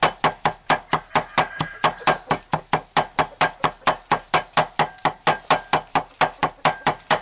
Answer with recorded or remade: recorded